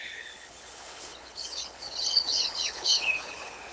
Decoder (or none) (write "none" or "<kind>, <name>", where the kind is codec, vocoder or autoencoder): codec, HILCodec